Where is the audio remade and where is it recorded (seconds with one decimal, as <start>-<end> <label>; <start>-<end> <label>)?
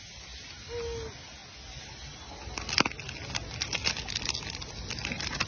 0.0-5.5 recorded